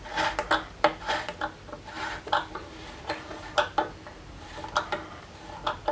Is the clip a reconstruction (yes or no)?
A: no